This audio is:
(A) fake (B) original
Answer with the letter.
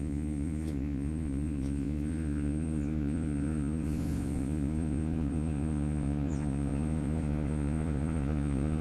A